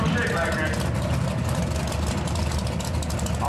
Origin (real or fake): real